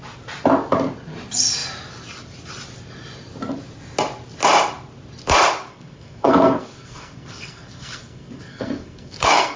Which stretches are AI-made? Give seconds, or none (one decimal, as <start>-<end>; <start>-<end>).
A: 5.7-9.6